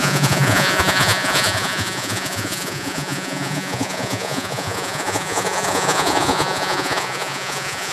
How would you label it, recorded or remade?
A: remade